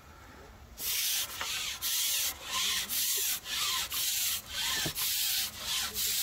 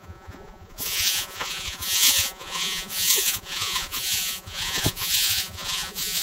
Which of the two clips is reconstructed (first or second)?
second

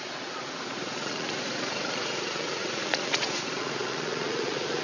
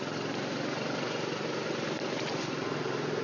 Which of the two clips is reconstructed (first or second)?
first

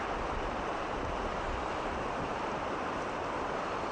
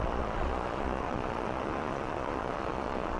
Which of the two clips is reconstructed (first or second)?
second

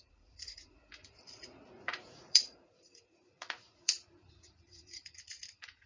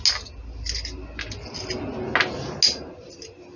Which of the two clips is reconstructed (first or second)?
first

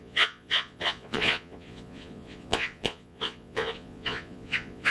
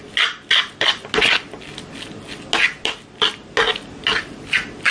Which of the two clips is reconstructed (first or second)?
first